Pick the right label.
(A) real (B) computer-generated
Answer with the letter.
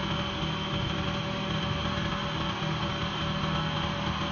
A